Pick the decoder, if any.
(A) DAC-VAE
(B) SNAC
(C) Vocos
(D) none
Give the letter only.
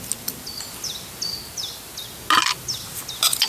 D